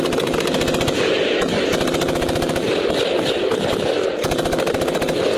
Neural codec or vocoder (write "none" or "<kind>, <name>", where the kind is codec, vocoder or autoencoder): none